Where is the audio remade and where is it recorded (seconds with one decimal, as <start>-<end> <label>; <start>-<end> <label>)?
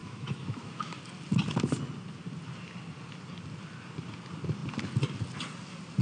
0.0-0.9 remade; 0.9-6.0 recorded